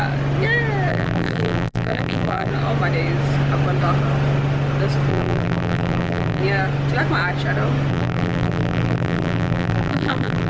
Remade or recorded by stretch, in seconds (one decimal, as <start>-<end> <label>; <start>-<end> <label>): 0.0-0.9 recorded; 0.9-2.5 remade; 2.5-5.1 recorded; 5.1-6.4 remade; 6.4-7.9 recorded; 7.9-10.5 remade